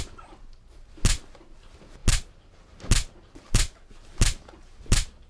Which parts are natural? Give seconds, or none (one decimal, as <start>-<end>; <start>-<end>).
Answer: 0.0-5.3